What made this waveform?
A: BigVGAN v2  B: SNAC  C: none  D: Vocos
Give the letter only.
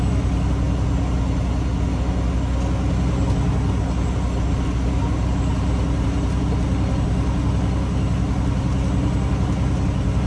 C